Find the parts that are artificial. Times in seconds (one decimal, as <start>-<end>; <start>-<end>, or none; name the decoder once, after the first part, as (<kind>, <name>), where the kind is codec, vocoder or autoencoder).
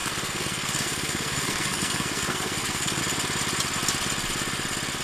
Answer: 0.0-3.0 (codec, SNAC)